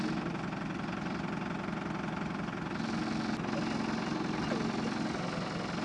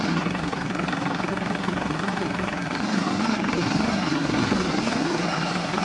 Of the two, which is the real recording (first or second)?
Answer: first